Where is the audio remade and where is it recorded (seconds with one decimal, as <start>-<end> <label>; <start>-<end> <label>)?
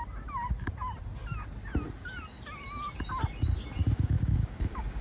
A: 0.0-3.8 recorded; 3.8-5.0 remade